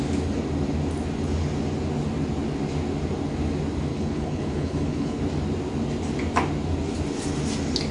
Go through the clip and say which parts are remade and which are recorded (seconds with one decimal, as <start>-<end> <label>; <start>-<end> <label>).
0.0-3.9 recorded; 3.9-5.2 remade; 5.2-7.9 recorded